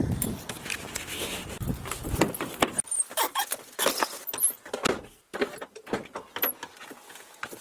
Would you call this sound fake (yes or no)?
no